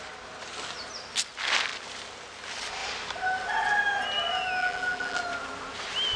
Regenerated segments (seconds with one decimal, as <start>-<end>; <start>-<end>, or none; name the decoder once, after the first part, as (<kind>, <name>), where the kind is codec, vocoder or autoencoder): 4.6-5.2 (vocoder, BigVGAN v2)